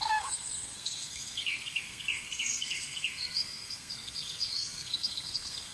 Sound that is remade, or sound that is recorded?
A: remade